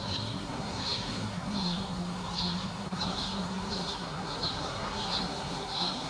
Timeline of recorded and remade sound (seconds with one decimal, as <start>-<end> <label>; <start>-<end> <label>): 0.0-6.1 remade